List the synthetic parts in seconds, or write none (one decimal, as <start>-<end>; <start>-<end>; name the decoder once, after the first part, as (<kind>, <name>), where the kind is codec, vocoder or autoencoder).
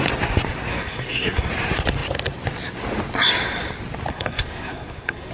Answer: 0.7-1.5 (codec, SNAC); 4.1-5.3